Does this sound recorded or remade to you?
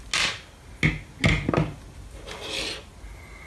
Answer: recorded